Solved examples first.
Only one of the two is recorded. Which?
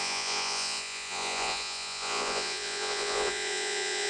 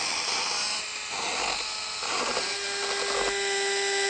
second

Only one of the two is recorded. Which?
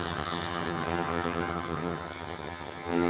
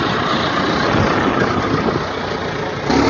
second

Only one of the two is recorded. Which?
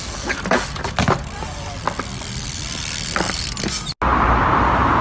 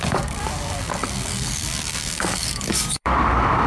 first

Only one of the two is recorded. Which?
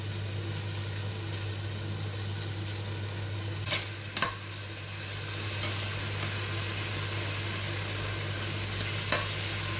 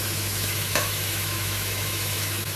first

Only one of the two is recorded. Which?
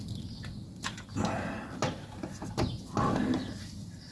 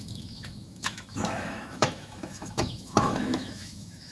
first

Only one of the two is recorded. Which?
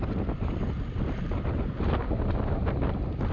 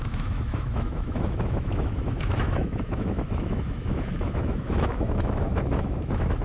first